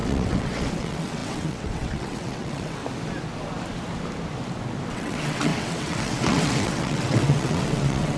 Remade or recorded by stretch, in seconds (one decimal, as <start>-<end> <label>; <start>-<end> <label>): 0.0-2.8 remade; 2.8-4.9 recorded; 4.9-8.2 remade